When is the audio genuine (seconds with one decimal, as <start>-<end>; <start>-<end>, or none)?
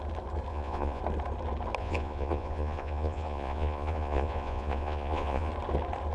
0.0-0.5; 1.0-1.8; 5.5-6.1